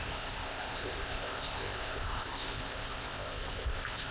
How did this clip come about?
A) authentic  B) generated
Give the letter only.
B